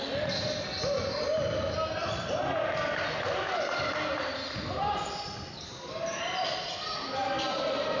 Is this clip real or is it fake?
real